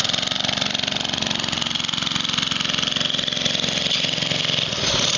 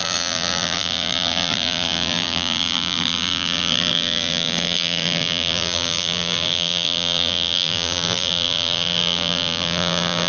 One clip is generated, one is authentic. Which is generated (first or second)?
second